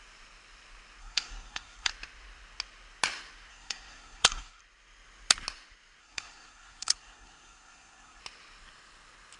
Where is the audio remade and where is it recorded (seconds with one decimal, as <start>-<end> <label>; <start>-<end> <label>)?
0.0-1.0 recorded; 1.0-1.9 remade; 1.9-3.5 recorded; 3.5-4.6 remade; 4.6-6.0 recorded; 6.0-8.2 remade; 8.2-9.4 recorded